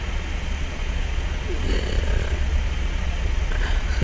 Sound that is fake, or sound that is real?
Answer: fake